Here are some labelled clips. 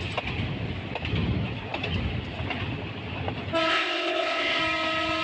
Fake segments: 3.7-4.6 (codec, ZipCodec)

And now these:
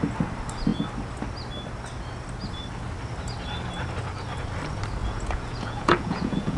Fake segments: 5.0-6.6 (vocoder, Vocos)